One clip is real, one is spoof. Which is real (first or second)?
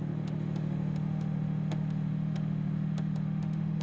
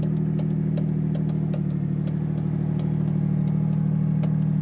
second